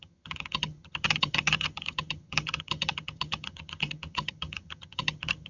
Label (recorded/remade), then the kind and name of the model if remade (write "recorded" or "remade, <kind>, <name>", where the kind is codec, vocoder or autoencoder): remade, vocoder, HiFi-GAN